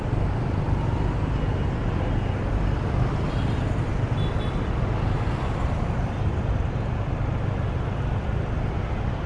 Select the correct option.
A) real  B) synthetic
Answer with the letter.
A